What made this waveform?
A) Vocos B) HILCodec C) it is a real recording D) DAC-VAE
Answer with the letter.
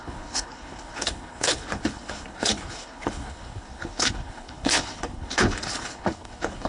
B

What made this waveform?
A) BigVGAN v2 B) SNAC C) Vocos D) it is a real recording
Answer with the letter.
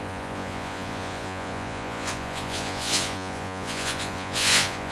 C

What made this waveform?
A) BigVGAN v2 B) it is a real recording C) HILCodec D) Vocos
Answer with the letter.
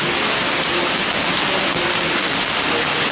B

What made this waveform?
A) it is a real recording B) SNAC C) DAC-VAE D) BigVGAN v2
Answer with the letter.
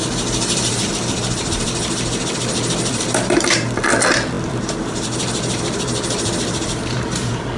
D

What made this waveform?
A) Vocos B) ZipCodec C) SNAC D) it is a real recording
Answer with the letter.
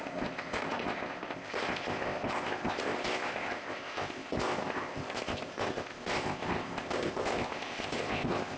B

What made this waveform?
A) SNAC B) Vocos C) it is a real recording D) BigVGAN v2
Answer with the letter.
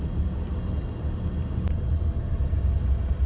C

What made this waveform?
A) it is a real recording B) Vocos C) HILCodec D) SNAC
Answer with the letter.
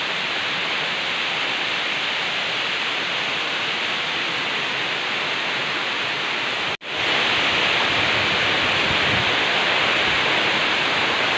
A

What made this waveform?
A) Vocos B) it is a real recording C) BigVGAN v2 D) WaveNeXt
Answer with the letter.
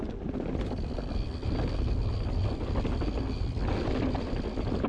B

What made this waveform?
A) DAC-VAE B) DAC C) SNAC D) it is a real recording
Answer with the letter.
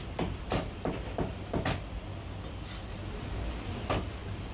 D